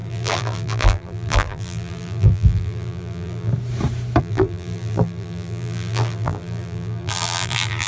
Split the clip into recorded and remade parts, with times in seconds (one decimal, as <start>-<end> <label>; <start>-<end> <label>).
0.0-3.5 remade; 3.5-4.2 recorded; 4.2-7.9 remade